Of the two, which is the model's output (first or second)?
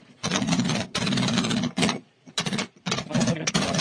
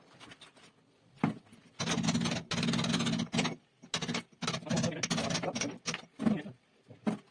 first